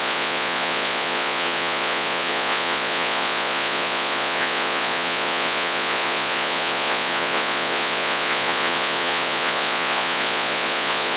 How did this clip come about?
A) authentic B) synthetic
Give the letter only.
B